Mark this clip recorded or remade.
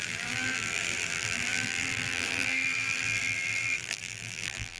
remade